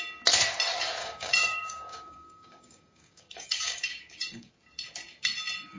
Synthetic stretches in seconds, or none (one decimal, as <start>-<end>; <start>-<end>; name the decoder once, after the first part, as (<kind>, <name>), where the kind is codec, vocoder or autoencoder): 1.0-4.5 (codec, DAC)